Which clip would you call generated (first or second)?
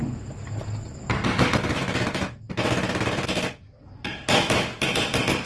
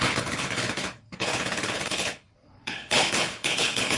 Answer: second